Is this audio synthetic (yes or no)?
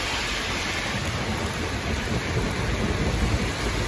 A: yes